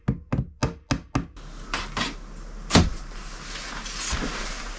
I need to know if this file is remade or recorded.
recorded